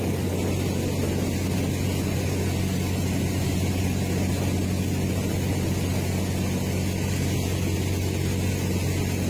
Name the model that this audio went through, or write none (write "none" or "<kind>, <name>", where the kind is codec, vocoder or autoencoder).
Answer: none